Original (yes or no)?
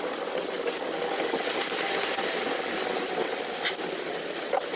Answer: yes